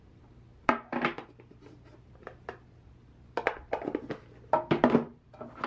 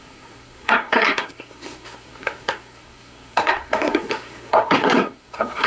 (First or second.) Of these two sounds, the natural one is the first